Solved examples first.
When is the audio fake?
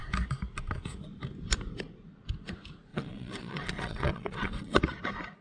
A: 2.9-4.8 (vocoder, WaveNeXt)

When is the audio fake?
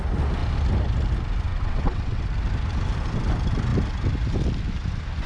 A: 1.5-2.2 (vocoder, WaveNeXt)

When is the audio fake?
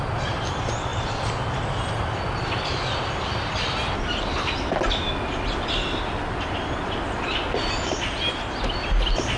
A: none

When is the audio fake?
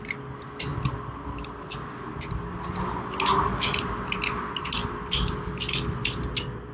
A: none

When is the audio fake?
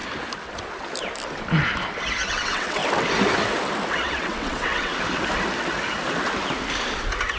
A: 2.3-2.8 (vocoder, WaveNeXt); 3.9-4.9